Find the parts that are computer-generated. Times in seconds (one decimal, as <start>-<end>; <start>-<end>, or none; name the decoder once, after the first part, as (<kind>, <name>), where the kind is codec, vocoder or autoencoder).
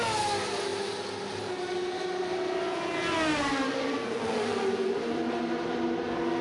3.3-5.3 (vocoder, BigVGAN v2)